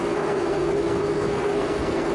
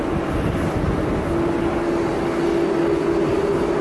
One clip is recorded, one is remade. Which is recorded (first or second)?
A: second